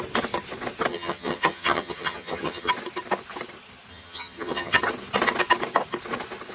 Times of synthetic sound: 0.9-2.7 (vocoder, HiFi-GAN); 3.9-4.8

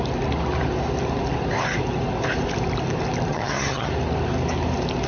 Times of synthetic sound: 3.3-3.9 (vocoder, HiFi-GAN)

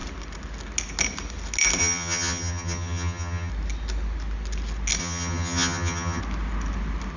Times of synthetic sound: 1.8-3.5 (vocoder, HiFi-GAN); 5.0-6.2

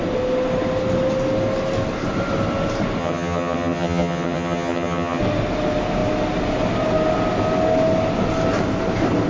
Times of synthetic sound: 3.0-5.2 (vocoder, HiFi-GAN)

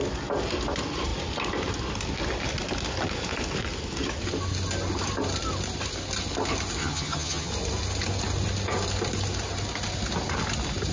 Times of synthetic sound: 6.8-7.5 (vocoder, HiFi-GAN)

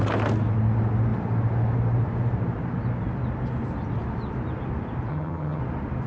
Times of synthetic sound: 5.1-5.6 (vocoder, HiFi-GAN)